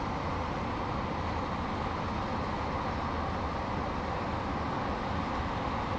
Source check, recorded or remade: recorded